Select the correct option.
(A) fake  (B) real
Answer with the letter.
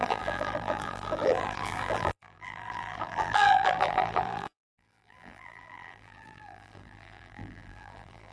A